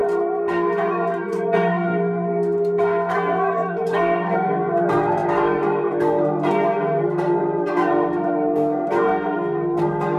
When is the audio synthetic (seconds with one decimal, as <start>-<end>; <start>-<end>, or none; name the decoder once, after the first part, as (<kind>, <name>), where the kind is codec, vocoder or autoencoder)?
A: 0.0-10.2 (codec, SNAC)